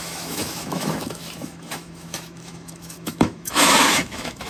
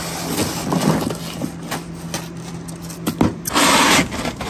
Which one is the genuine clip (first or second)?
second